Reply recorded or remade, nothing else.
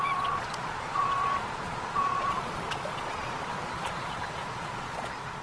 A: remade